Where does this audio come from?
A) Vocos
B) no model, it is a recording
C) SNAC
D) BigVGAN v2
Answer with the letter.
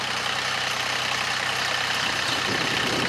B